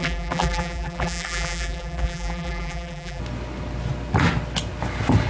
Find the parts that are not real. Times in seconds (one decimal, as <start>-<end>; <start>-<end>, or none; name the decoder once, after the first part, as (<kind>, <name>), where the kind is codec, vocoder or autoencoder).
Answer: 0.0-3.2 (vocoder, BigVGAN v2)